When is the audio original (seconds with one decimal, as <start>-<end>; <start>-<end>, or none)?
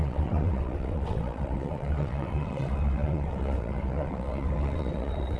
none